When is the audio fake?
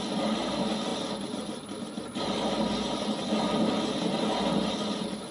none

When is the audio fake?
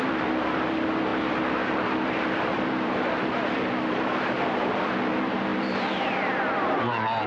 0.0-1.1 (vocoder, BigVGAN v2); 1.7-7.3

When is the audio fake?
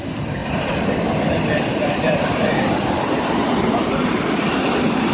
none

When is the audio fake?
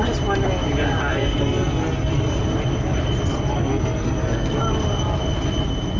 1.1-2.4 (codec, SNAC); 3.5-4.6